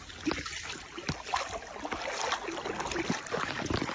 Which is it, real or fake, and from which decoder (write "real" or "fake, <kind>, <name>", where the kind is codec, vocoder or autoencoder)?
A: real